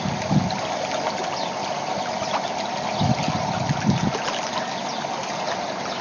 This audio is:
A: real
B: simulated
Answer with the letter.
A